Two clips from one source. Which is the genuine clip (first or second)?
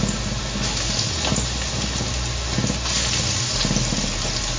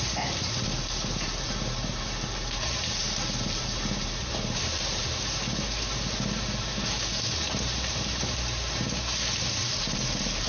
first